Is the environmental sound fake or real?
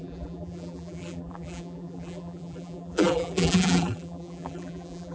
fake